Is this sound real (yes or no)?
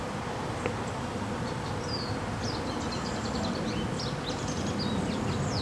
yes